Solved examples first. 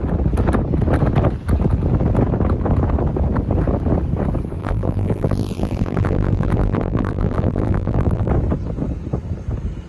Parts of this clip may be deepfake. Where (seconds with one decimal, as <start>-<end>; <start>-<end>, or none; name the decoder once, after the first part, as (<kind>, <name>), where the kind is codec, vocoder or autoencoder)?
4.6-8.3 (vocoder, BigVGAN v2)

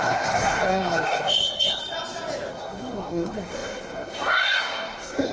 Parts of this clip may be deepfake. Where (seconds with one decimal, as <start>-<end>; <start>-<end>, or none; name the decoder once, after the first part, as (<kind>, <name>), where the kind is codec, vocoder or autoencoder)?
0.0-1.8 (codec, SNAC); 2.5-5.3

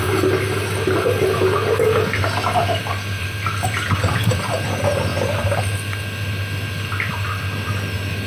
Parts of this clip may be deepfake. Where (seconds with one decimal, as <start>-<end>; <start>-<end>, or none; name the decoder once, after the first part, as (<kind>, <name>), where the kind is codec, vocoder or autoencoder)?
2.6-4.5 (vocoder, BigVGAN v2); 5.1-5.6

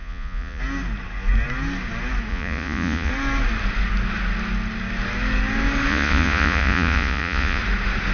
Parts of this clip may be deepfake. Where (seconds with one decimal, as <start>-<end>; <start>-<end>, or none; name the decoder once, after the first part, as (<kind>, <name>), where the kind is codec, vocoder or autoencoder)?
0.0-0.6 (vocoder, Vocos); 2.3-3.1; 5.9-7.6